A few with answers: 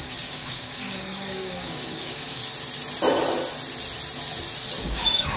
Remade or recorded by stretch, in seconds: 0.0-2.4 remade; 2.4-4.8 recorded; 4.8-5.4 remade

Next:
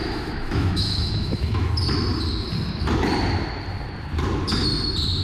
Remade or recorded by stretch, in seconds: 0.0-1.7 remade; 1.7-5.2 recorded

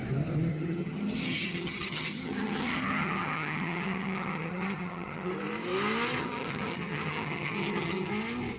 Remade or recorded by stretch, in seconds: 0.0-0.5 recorded; 0.5-5.3 remade; 5.3-6.2 recorded; 6.2-8.1 remade; 8.1-8.6 recorded

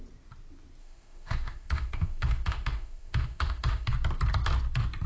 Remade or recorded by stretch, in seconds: 0.0-0.8 recorded; 0.8-3.9 remade; 3.9-5.1 recorded

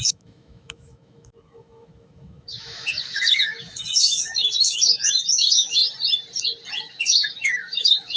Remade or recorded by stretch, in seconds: 0.0-5.8 remade; 5.8-6.7 recorded; 6.7-8.2 remade